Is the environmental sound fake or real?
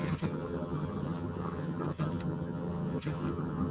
fake